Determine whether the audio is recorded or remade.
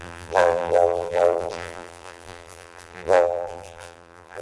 remade